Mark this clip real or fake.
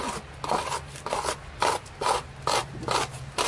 real